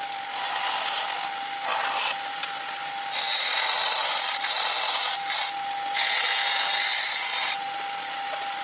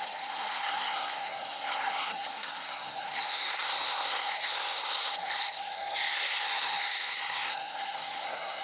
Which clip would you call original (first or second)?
first